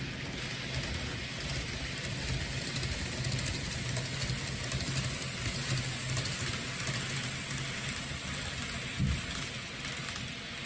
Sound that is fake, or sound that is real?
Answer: real